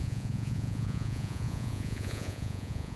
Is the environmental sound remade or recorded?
remade